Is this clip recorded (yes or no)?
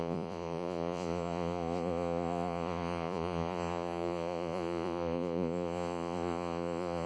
no